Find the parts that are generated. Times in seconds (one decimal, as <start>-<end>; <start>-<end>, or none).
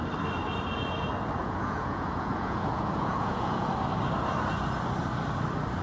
1.4-3.7